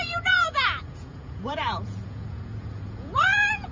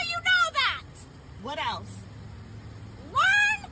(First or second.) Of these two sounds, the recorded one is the second